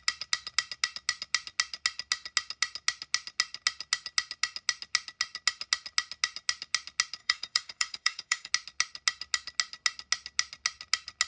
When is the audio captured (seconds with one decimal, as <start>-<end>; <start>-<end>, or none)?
0.0-7.2; 8.5-11.3